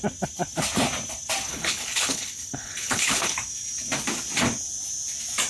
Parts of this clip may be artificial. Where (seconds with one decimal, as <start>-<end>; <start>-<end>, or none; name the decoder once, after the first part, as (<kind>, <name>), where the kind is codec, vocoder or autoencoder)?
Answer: 1.5-3.3 (codec, HILCodec)

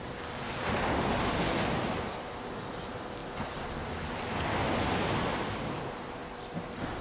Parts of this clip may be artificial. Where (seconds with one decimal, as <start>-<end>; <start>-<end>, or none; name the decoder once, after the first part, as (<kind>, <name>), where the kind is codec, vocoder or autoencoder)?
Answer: none

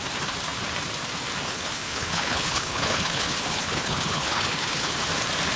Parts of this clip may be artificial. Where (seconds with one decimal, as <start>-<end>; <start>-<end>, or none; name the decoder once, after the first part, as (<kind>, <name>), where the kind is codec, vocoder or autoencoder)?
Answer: 1.5-4.9 (codec, HILCodec)